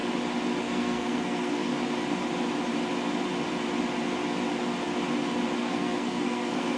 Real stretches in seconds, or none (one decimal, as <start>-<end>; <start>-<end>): 0.0-0.6; 1.7-5.6